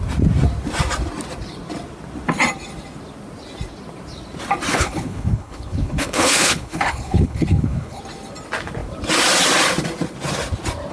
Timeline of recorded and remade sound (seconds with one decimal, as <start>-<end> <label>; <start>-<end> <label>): 0.0-4.7 recorded; 4.7-8.0 remade; 8.0-10.9 recorded